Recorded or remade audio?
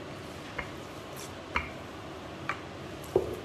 recorded